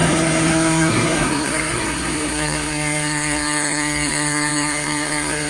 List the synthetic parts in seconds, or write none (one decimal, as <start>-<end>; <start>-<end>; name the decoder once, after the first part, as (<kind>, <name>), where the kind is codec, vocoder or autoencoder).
0.0-5.5 (codec, SNAC)

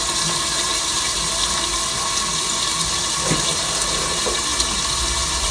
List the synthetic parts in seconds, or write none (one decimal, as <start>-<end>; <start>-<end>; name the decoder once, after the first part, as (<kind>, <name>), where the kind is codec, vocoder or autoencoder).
none

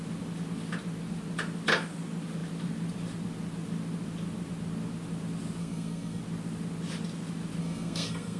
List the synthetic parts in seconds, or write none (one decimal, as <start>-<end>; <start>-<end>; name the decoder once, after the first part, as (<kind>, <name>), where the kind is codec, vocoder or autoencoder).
5.6-6.2 (codec, SNAC); 7.6-8.4

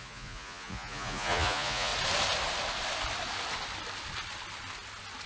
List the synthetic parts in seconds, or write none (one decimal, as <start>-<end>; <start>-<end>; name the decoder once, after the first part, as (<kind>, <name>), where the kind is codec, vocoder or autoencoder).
0.0-1.9 (vocoder, Vocos)